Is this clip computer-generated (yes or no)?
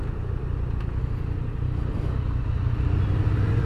no